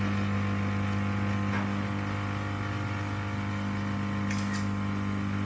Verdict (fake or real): real